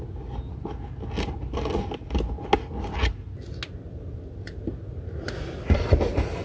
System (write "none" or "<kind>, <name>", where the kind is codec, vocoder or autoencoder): none